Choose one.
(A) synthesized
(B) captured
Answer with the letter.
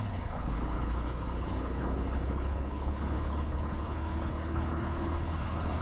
A